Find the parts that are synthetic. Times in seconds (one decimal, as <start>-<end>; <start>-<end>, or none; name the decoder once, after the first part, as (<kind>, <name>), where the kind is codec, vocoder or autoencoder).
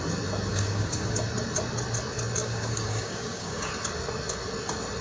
0.5-1.2 (codec, DAC); 2.4-3.7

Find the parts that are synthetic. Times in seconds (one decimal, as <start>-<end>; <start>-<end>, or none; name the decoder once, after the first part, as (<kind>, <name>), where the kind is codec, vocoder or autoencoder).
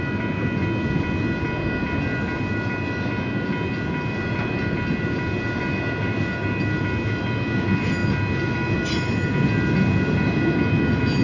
none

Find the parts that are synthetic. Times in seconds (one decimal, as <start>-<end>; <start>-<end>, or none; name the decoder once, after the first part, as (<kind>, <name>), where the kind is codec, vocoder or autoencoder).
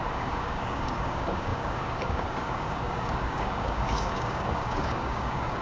0.0-5.6 (codec, DAC)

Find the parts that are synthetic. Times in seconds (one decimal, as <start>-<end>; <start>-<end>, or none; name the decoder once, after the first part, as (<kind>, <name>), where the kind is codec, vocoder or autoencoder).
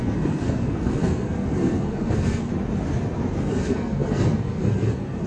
0.0-2.5 (codec, SNAC); 3.4-5.3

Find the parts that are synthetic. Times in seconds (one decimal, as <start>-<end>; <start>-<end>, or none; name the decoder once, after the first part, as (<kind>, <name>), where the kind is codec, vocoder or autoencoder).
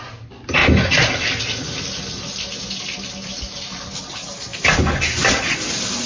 none